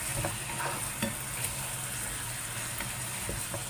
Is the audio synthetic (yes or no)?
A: no